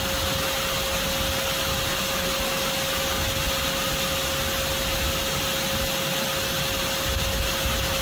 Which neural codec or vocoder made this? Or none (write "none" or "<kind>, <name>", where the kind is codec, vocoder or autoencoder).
none